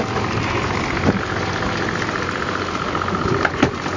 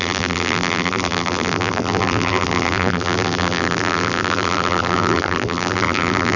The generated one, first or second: second